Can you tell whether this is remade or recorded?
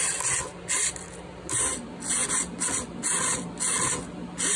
recorded